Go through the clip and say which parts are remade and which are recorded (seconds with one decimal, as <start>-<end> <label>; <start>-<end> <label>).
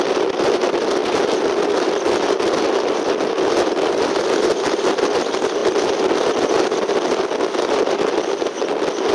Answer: 0.0-9.1 recorded